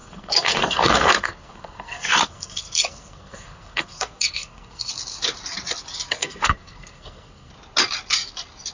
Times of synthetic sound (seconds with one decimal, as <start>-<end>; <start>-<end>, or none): 0.0-4.9; 6.2-7.5